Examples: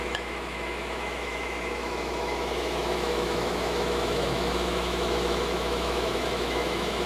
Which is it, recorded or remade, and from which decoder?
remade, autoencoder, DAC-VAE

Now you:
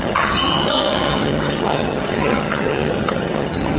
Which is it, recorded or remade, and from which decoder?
remade, vocoder, HiFi-GAN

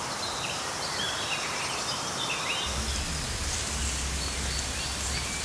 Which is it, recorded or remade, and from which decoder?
recorded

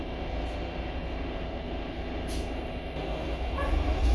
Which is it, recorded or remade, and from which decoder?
remade, vocoder, BigVGAN v2